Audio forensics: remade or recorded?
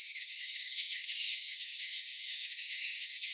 remade